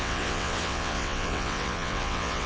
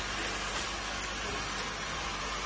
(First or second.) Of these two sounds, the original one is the second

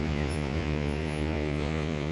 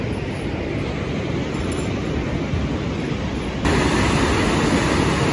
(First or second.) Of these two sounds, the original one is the second